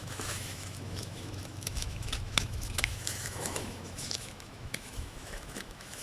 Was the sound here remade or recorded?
remade